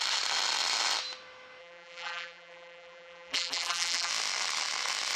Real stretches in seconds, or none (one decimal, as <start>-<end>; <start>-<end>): 0.0-1.6; 4.1-5.2